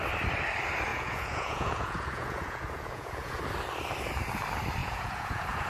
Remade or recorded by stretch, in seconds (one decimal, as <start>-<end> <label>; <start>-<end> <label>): 0.0-0.9 recorded; 0.9-3.4 remade; 3.4-4.8 recorded; 4.8-5.7 remade